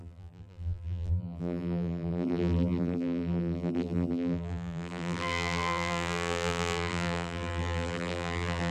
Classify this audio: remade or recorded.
remade